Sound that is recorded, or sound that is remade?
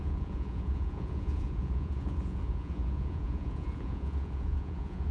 remade